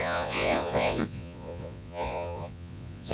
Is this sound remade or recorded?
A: remade